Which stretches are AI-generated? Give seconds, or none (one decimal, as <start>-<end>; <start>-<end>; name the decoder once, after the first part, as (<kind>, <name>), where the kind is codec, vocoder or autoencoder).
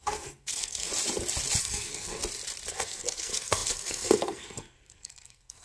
0.0-0.9 (codec, SNAC); 1.6-2.2; 2.7-5.6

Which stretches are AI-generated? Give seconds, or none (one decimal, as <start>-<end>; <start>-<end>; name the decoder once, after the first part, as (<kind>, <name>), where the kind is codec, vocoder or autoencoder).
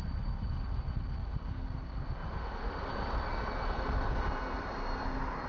2.4-2.9 (autoencoder, DAC-VAE)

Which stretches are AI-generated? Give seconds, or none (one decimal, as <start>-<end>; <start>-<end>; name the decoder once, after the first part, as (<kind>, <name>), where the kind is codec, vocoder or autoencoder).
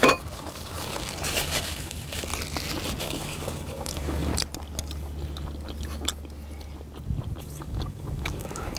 0.0-2.3 (codec, DAC); 3.0-4.3; 7.4-8.8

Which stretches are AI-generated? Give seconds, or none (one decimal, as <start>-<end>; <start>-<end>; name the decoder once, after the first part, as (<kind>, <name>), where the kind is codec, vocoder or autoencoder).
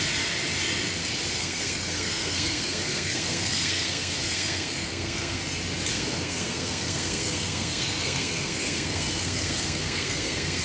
1.4-5.4 (codec, SNAC); 5.9-10.6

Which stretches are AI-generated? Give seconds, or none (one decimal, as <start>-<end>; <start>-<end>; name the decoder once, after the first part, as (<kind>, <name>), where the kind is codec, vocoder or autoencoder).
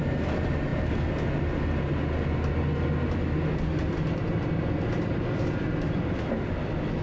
none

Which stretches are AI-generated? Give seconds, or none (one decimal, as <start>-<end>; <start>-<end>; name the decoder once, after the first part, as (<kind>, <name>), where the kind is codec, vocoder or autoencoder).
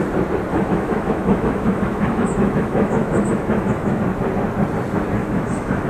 0.5-4.0 (autoencoder, DAC-VAE); 5.2-5.9